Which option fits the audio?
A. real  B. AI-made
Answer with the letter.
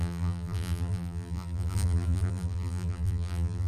B